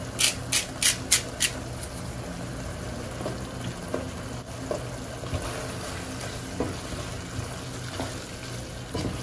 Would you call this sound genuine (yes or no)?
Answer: yes